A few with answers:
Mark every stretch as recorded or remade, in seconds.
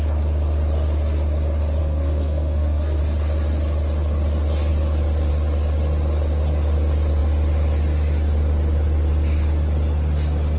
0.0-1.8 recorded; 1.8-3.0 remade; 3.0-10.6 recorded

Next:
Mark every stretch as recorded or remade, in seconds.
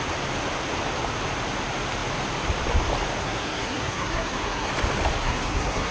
0.0-3.2 recorded; 3.2-4.7 remade; 4.7-5.2 recorded; 5.2-5.9 remade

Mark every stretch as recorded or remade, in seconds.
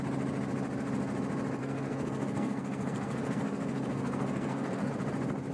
0.0-1.6 recorded; 1.6-4.9 remade; 4.9-5.5 recorded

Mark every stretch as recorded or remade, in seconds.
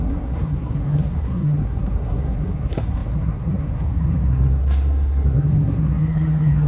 0.0-6.7 remade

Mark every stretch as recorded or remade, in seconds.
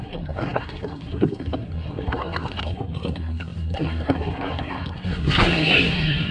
0.0-6.3 remade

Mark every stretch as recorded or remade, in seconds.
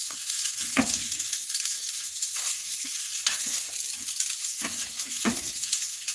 0.0-3.7 remade; 3.7-4.4 recorded; 4.4-6.1 remade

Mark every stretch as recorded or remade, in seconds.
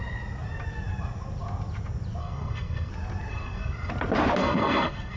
0.0-2.2 recorded; 2.2-2.9 remade; 2.9-3.3 recorded; 3.3-3.9 remade; 3.9-4.4 recorded; 4.4-5.2 remade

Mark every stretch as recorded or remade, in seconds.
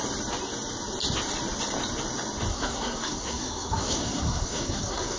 0.0-2.5 recorded; 2.5-5.2 remade